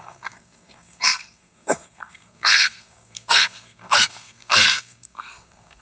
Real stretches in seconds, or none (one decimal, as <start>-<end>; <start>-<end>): none